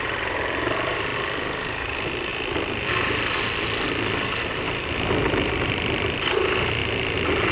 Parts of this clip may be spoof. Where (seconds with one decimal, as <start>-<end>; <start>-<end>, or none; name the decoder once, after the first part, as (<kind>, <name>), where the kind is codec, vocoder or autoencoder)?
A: 0.0-1.1 (vocoder, BigVGAN v2); 1.7-2.3; 2.9-6.8